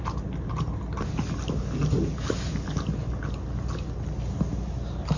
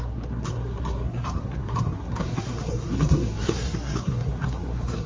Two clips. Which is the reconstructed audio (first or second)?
second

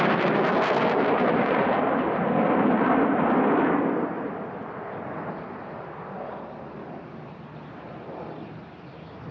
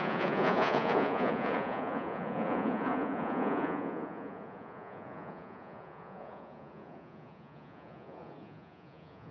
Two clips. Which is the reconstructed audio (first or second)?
second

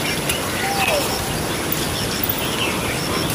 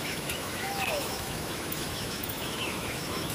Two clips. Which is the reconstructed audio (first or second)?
second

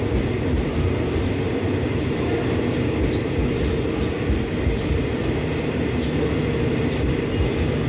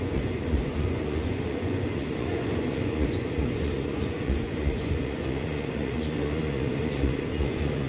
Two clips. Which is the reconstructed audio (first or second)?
second